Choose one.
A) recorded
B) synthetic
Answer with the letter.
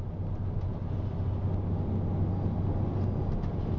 A